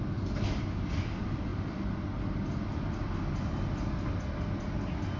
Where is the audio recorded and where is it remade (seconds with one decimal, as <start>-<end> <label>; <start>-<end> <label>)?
0.0-5.2 recorded

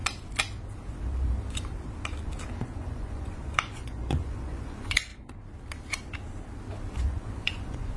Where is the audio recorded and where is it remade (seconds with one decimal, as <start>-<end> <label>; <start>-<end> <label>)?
0.0-2.5 recorded; 2.5-5.1 remade; 5.1-7.0 recorded; 7.0-8.0 remade

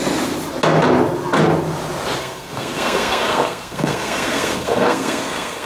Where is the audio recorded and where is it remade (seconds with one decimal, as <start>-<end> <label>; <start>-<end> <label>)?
0.0-2.2 recorded; 2.2-5.7 remade

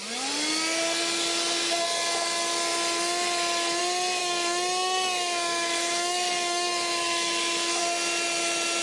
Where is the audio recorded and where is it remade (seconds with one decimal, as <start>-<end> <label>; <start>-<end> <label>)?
0.0-4.2 recorded; 4.2-7.8 remade; 7.8-8.8 recorded

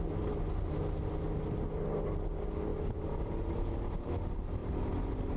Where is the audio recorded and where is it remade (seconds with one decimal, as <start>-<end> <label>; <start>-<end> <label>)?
0.0-2.7 recorded; 2.7-4.1 remade; 4.1-4.6 recorded; 4.6-5.4 remade

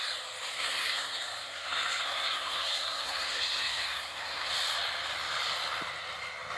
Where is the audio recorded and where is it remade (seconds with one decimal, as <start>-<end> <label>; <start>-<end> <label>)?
0.0-0.5 recorded; 0.5-4.5 remade; 4.5-6.6 recorded

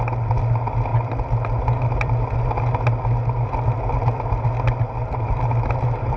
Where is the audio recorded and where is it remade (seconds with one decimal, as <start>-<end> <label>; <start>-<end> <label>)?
0.0-6.2 recorded

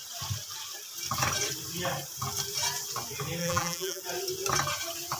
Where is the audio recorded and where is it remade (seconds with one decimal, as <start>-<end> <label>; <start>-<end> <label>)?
0.0-3.4 recorded; 3.4-4.0 remade; 4.0-5.2 recorded